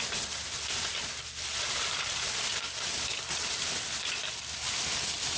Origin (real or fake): real